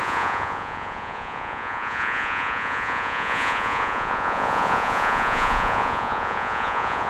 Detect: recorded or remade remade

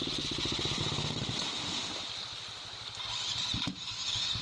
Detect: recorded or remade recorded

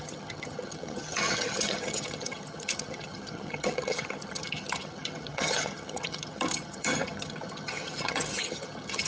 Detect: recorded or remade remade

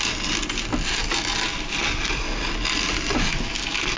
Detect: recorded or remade recorded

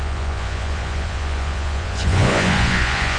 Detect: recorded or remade remade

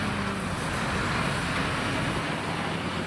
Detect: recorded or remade recorded